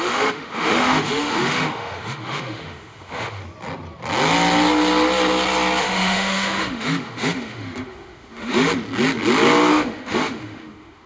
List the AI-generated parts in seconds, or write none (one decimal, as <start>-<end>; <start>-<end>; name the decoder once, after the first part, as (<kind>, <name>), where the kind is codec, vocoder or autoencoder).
0.0-3.4 (autoencoder, DAC-VAE); 5.8-8.7; 9.7-11.1